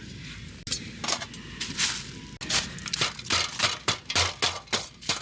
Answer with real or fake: real